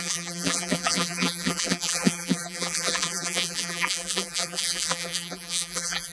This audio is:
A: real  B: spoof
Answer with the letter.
B